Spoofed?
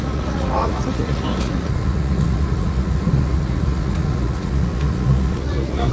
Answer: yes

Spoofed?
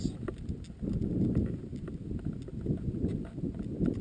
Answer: no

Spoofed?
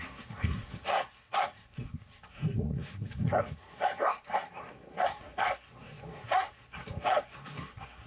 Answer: yes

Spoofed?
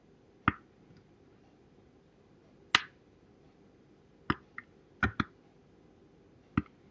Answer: no